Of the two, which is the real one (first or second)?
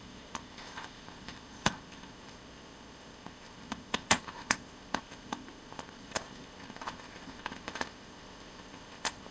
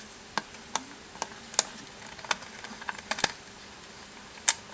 second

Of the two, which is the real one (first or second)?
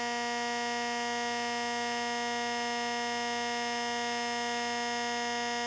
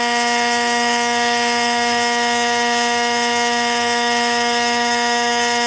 first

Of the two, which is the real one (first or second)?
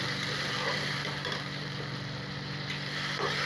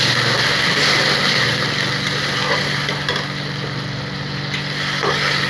second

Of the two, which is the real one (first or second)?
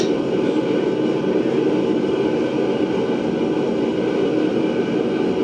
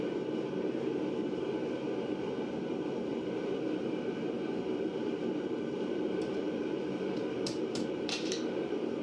first